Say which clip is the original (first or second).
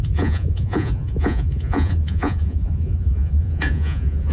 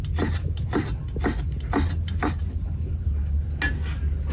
second